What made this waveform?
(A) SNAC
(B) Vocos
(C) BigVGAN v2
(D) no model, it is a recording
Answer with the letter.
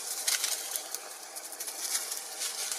D